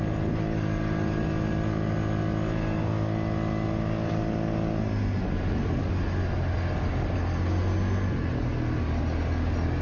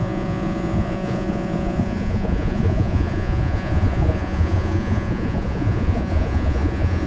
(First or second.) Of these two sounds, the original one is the first